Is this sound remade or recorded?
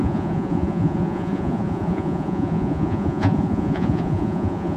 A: remade